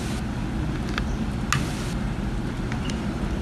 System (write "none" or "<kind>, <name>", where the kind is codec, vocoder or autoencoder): none